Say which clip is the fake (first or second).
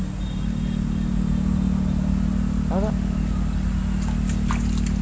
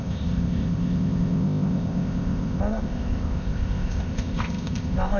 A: second